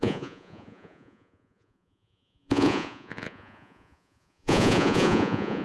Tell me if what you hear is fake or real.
fake